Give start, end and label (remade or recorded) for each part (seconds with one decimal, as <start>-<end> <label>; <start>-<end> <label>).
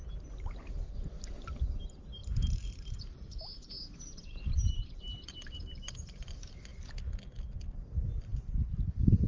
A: 0.0-2.2 recorded; 2.2-6.2 remade; 6.2-9.3 recorded